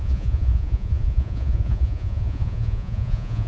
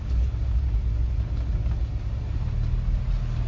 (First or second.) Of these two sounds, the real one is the second